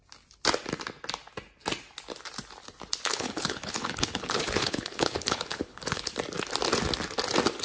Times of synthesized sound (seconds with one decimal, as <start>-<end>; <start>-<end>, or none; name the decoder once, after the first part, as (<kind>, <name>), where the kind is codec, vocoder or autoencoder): 3.1-6.1 (codec, HILCodec)